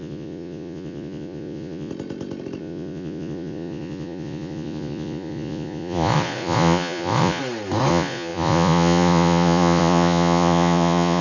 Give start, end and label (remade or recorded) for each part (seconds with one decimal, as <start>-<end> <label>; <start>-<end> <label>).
0.0-1.9 remade; 1.9-2.6 recorded; 2.6-7.4 remade; 7.4-7.9 recorded; 7.9-11.2 remade

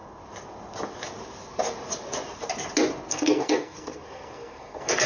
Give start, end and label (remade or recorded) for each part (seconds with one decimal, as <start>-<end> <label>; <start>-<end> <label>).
0.0-3.1 recorded; 3.1-5.1 remade